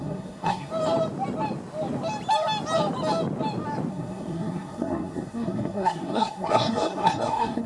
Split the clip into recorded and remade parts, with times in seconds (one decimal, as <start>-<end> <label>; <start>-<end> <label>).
0.0-0.7 remade; 0.7-3.9 recorded; 3.9-7.7 remade